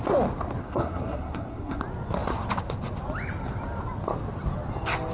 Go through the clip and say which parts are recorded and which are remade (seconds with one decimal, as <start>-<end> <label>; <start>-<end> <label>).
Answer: 0.0-0.6 recorded; 0.6-1.8 remade; 1.8-5.1 recorded